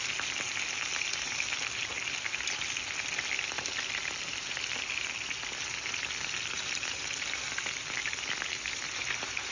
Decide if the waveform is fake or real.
real